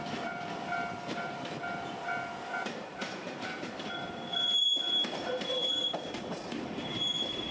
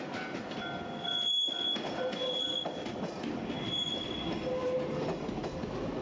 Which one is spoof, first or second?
first